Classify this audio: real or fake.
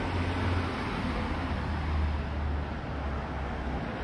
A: real